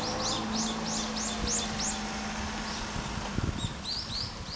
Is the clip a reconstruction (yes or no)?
no